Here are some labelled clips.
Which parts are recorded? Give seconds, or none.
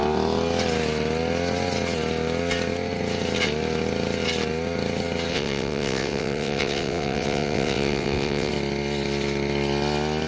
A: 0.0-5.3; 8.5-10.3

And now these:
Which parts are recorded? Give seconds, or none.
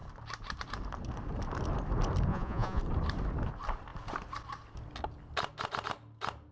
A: 0.0-2.3; 2.8-6.5